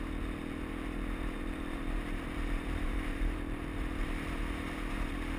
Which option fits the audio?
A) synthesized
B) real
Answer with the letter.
A